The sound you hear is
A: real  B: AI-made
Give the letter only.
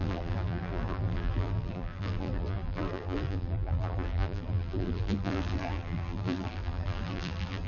B